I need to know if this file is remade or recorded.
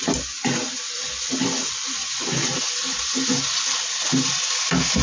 recorded